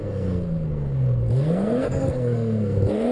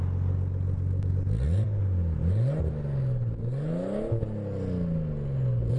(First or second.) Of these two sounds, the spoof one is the first